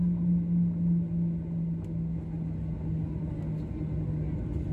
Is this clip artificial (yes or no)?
no